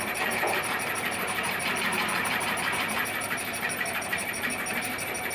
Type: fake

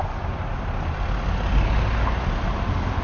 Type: real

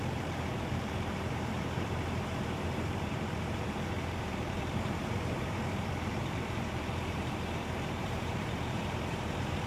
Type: fake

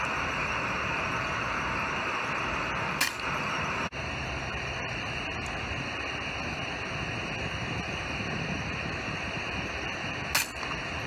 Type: real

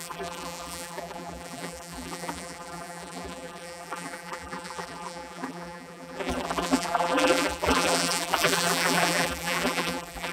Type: fake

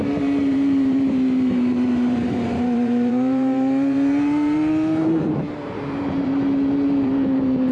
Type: fake